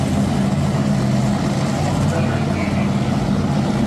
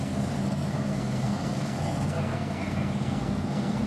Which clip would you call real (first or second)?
first